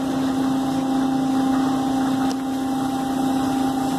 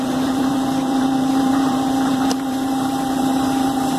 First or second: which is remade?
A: second